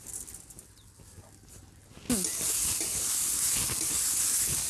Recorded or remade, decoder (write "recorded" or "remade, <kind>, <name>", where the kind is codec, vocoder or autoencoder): recorded